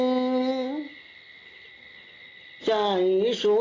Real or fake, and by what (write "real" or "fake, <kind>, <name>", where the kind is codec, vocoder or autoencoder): real